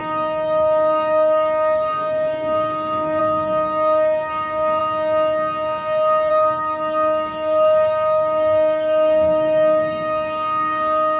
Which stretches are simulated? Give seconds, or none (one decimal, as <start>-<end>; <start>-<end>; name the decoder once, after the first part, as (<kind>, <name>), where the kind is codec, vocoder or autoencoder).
0.0-4.8 (codec, DAC); 6.3-11.2